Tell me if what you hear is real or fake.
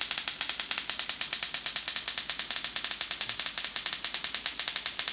real